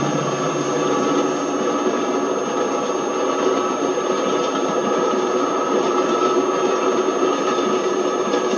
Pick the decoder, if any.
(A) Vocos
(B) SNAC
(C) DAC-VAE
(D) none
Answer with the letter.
D